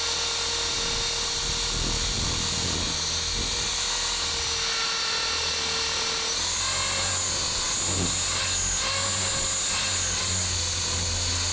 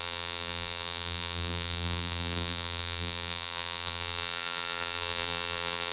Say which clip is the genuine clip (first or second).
first